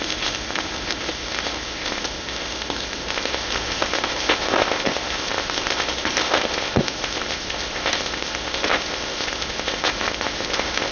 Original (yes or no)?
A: no